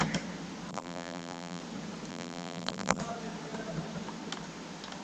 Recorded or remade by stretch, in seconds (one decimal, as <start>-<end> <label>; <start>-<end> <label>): 0.0-0.7 recorded; 0.7-1.6 remade; 1.6-2.1 recorded; 2.1-3.0 remade; 3.0-5.0 recorded